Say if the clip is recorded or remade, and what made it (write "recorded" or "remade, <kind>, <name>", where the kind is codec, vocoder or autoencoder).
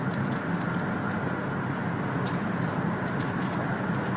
recorded